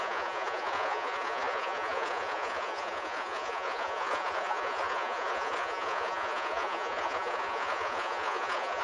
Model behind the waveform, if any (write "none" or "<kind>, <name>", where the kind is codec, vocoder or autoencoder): vocoder, Vocos